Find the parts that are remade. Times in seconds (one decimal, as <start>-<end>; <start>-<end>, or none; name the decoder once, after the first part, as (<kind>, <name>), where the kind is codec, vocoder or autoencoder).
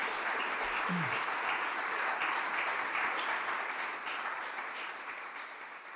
3.9-4.9 (vocoder, BigVGAN v2)